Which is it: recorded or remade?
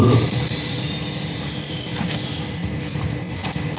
remade